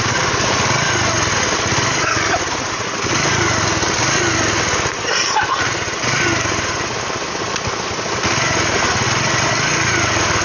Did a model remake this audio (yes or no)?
no